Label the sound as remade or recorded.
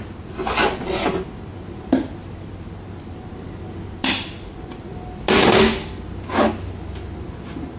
recorded